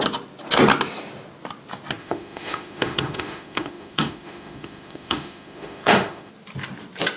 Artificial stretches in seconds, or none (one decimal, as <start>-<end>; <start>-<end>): 2.0-6.3